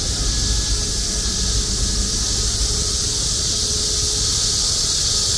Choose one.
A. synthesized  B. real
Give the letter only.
B